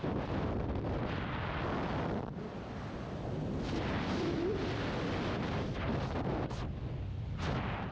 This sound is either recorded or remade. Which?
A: recorded